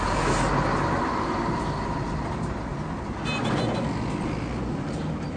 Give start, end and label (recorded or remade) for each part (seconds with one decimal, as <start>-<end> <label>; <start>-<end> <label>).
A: 0.0-5.4 recorded